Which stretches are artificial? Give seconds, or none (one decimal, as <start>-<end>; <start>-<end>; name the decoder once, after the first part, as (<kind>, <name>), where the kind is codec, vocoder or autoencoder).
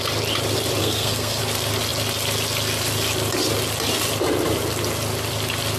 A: 0.8-1.4 (codec, SNAC)